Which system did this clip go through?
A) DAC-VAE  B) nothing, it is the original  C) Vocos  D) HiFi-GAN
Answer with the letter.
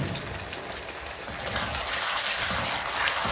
B